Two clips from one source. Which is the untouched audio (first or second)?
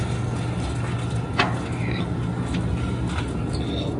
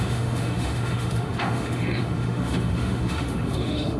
first